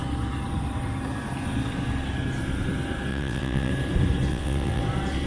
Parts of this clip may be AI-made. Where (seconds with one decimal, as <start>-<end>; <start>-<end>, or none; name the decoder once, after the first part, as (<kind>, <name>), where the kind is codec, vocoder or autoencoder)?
3.1-3.7 (vocoder, WaveNeXt); 4.3-4.8